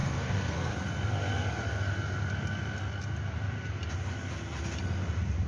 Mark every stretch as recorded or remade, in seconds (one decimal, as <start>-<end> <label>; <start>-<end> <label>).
0.0-0.7 remade; 0.7-5.5 recorded